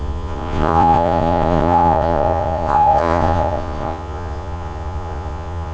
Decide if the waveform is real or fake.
fake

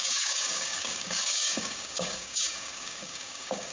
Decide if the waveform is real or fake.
fake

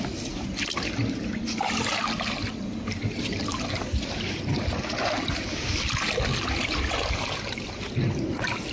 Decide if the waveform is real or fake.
real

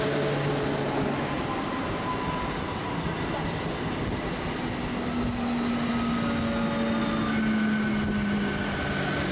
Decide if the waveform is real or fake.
real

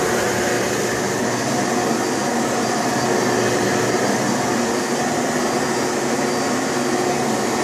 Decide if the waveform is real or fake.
real